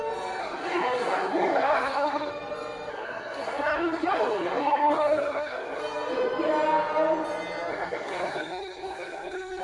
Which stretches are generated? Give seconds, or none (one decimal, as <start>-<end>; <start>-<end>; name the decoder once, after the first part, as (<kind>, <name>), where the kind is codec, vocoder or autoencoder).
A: 0.4-2.3 (codec, SNAC); 2.9-5.8; 7.7-9.6